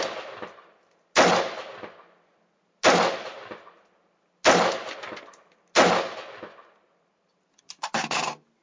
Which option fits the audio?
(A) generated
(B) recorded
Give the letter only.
B